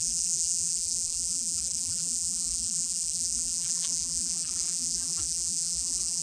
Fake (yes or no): yes